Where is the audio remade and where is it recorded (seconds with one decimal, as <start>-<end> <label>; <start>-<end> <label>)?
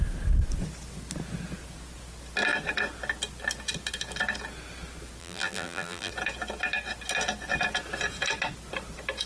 0.0-5.2 recorded; 5.2-6.1 remade; 6.1-9.3 recorded